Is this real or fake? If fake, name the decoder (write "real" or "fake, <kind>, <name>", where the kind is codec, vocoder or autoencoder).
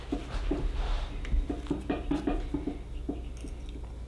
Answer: real